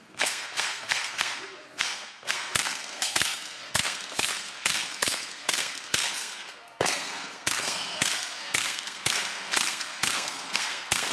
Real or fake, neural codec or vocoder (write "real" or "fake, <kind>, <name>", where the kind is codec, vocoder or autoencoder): fake, codec, SNAC